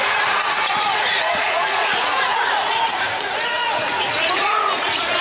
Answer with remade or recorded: remade